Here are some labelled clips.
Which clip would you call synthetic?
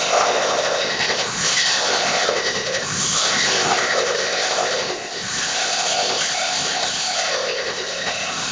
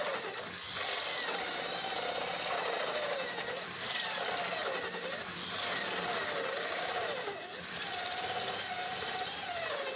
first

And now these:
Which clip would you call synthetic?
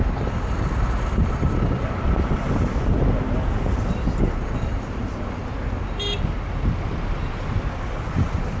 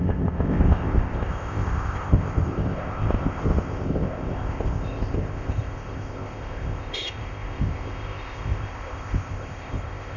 second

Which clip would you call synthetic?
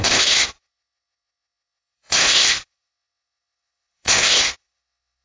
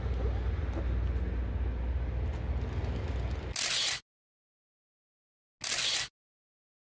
first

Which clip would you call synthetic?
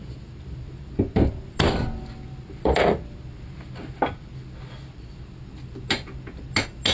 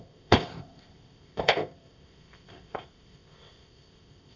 second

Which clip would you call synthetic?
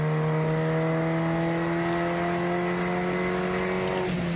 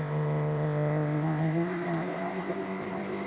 second